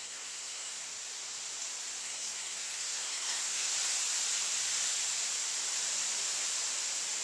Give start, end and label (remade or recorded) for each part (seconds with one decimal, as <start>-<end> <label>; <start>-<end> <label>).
0.0-0.9 remade; 0.9-2.0 recorded; 2.0-3.7 remade; 3.7-7.2 recorded